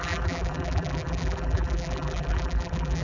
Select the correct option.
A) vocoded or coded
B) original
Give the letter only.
A